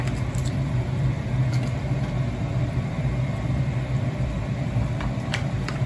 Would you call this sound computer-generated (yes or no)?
yes